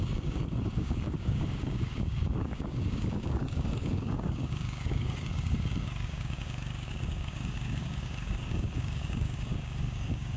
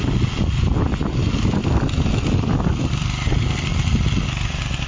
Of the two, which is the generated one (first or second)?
first